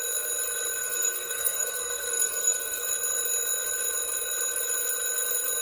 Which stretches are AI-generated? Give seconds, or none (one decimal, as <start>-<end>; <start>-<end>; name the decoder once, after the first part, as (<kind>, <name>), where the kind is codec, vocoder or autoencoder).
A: 0.8-2.8 (codec, SNAC)